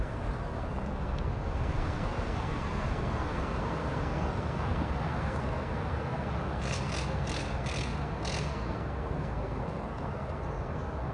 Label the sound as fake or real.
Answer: fake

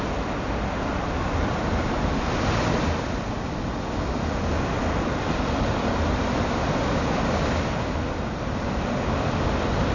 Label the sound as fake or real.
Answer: real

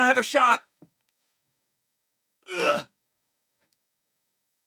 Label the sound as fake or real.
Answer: fake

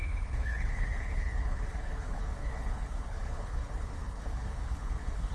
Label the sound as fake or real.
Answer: fake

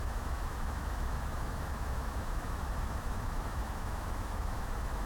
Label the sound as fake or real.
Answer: fake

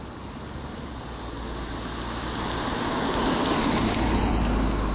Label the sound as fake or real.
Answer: real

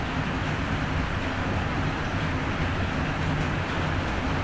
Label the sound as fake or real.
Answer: real